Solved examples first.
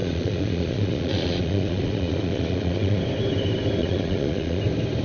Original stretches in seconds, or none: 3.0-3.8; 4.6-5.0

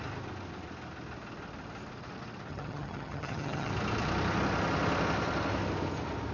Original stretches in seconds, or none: 0.0-2.5; 3.7-6.3

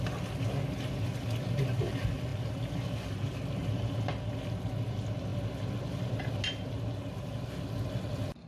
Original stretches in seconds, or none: 0.0-8.5

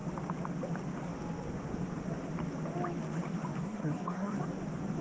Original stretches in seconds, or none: 0.0-3.6; 4.4-5.0

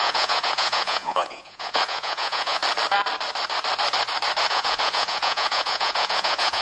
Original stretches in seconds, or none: 2.6-4.5

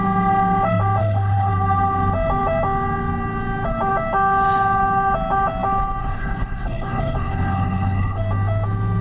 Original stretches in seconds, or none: 0.0-1.0; 1.5-6.0; 8.2-9.0

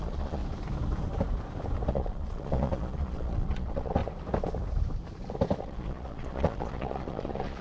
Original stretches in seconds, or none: 0.4-1.9; 4.0-5.6

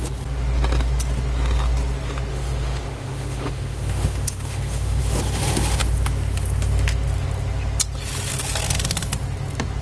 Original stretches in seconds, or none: 0.0-2.3; 5.0-9.8